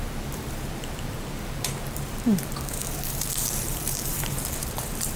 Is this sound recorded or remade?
remade